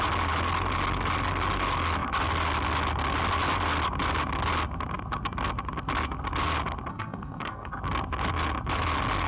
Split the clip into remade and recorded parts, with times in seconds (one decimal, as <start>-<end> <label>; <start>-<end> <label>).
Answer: 0.0-6.9 recorded; 6.9-7.7 remade; 7.7-9.3 recorded